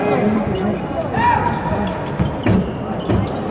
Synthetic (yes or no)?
no